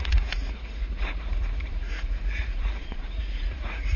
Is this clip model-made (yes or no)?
yes